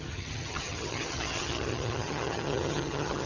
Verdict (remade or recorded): remade